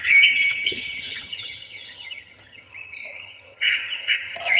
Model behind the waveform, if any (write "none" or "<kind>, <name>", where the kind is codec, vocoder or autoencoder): vocoder, HiFi-GAN